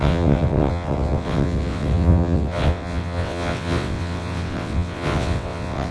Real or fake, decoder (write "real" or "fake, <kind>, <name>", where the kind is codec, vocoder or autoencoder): fake, vocoder, WaveNeXt